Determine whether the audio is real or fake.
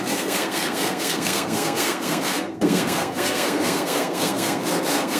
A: fake